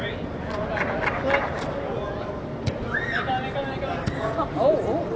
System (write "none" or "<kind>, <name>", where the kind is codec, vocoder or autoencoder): none